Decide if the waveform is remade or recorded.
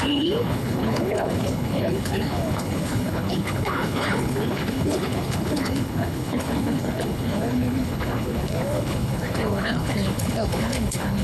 remade